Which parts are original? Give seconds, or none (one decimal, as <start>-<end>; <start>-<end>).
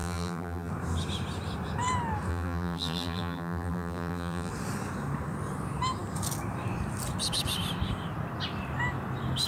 0.7-2.3; 4.5-9.5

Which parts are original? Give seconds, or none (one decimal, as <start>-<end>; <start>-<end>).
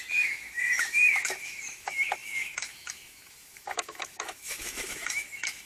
none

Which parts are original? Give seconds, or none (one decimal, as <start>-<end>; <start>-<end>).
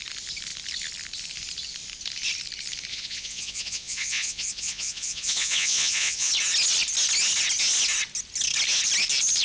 0.0-2.9; 6.3-9.4